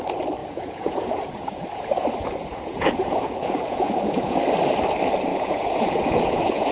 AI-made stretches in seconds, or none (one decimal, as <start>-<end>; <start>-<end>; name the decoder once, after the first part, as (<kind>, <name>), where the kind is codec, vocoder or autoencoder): 0.4-4.4 (vocoder, Vocos); 5.3-6.7